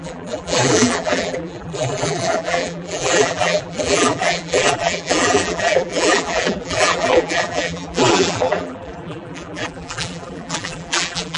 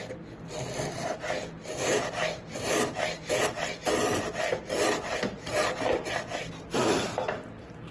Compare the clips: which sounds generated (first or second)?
first